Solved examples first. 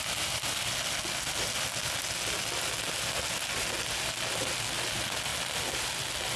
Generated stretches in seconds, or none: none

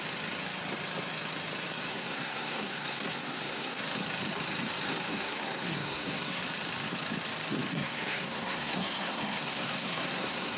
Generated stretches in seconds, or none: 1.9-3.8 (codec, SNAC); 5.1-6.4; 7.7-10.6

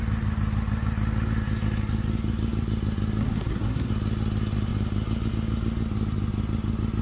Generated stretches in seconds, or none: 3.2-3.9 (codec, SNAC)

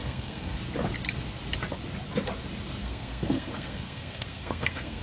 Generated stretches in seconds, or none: 0.0-0.6 (codec, SNAC); 2.8-5.0